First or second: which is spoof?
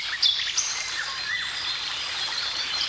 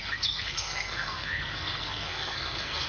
second